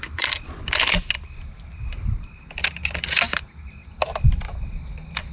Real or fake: real